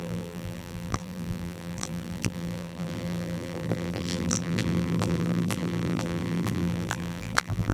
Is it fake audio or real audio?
fake